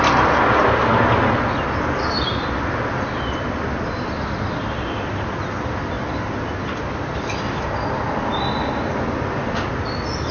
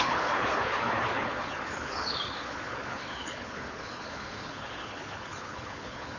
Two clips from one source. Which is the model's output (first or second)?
second